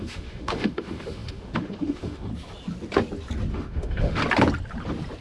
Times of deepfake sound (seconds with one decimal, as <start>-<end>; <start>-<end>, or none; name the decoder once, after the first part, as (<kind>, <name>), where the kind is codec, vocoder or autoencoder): 0.0-2.3 (autoencoder, DAC-VAE); 3.5-4.2